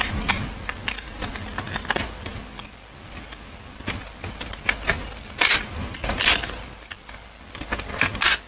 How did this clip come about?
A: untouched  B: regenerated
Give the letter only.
A